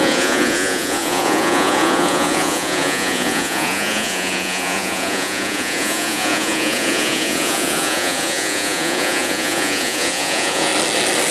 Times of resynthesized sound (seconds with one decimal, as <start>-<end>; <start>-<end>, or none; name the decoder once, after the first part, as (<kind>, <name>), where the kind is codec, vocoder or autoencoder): 0.0-10.7 (vocoder, Vocos)